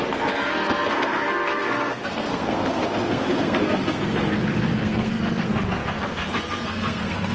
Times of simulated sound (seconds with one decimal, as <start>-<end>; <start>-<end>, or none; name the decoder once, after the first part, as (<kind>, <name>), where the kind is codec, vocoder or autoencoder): 0.0-7.3 (codec, SNAC)